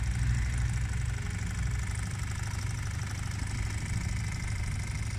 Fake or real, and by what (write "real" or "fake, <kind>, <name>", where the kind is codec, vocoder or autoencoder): real